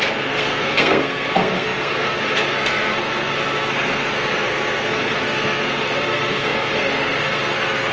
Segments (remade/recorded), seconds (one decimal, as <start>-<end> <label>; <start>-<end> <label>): 0.0-7.9 remade